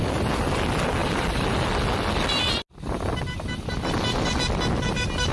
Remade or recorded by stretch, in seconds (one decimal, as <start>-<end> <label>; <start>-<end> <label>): 0.0-5.3 recorded